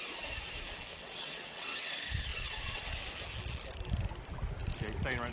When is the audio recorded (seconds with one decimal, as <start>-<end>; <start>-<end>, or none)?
0.0-0.9; 1.9-2.3; 2.8-5.3